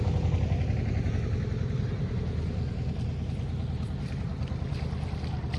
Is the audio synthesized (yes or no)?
no